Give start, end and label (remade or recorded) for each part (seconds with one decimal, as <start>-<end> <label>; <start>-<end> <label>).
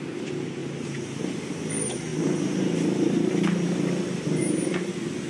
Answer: 0.0-0.6 recorded; 0.6-1.2 remade; 1.2-5.3 recorded